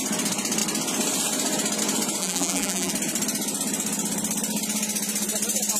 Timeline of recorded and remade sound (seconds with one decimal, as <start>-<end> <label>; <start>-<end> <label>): 0.0-2.2 recorded; 2.2-2.9 remade; 2.9-5.8 recorded